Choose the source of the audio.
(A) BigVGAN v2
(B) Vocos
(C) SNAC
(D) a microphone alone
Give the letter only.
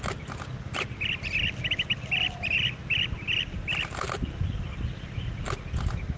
D